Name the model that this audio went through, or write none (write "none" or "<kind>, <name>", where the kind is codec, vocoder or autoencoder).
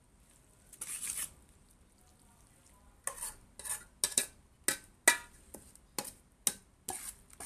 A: none